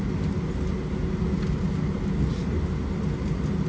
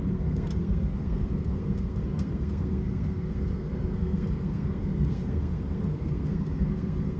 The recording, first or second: first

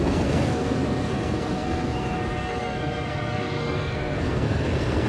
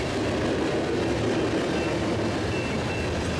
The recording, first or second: second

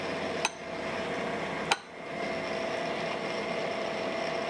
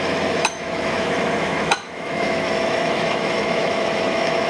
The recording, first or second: first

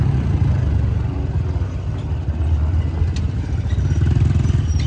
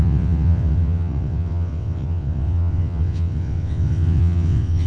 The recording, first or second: first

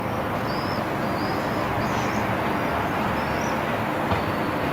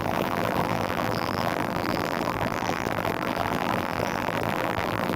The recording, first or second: first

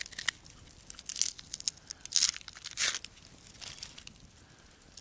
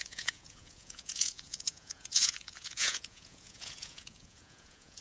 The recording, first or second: first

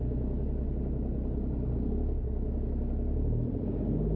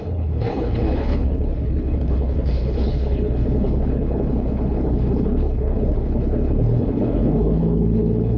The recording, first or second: first